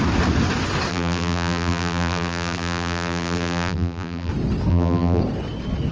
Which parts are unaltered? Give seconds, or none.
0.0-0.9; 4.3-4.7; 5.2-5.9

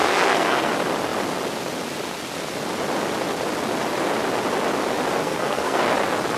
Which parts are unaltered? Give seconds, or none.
0.7-5.2; 5.8-6.4

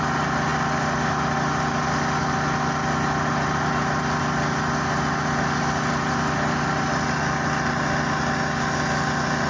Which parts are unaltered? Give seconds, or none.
0.0-9.5

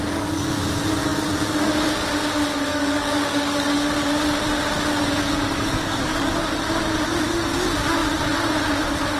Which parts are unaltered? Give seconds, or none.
0.0-2.7; 3.8-5.2; 6.3-9.2

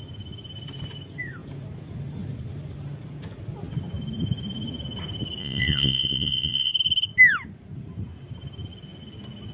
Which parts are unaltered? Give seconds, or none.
0.0-5.4; 6.7-9.5

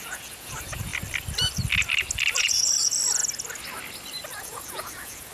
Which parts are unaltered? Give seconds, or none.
0.9-2.4; 3.2-4.4

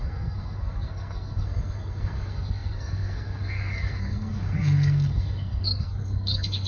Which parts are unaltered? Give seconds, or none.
none

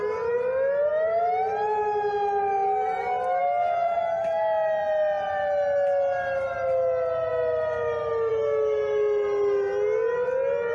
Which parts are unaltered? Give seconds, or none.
0.0-10.7